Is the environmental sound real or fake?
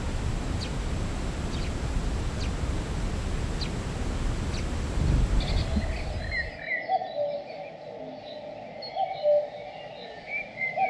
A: real